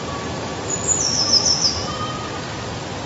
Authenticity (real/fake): fake